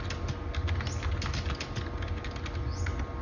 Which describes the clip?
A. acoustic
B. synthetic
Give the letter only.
A